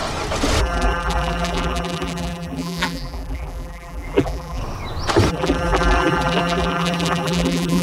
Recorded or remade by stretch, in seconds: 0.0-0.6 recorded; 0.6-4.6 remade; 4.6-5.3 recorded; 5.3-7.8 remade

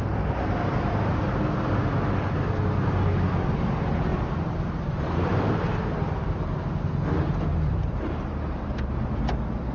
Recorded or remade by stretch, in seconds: 0.0-4.1 recorded; 4.1-6.5 remade; 6.5-7.5 recorded; 7.5-9.1 remade; 9.1-9.7 recorded